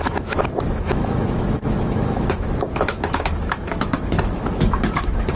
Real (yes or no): no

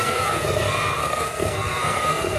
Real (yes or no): no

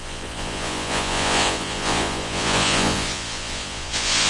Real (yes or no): no